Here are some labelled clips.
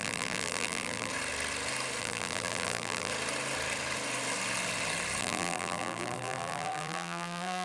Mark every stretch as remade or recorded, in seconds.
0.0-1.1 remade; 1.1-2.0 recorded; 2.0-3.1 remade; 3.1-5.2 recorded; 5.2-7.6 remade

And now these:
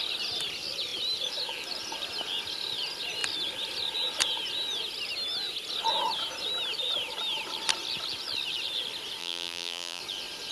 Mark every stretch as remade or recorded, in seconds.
0.0-9.2 recorded; 9.2-10.0 remade; 10.0-10.5 recorded

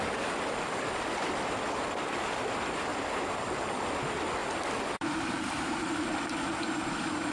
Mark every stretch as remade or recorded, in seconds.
0.0-4.4 recorded; 4.4-6.5 remade; 6.5-7.3 recorded

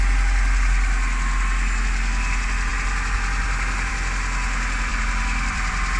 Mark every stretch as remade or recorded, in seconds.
0.0-4.9 recorded; 4.9-6.0 remade

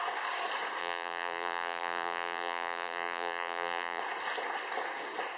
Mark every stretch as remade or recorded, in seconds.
0.0-0.8 recorded; 0.8-4.0 remade; 4.0-5.4 recorded

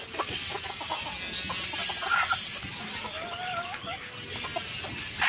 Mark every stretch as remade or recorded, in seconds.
0.0-1.8 recorded; 1.8-3.4 remade; 3.4-5.3 recorded